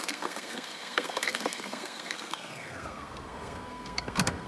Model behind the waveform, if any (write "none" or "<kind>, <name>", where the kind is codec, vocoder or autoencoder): codec, SNAC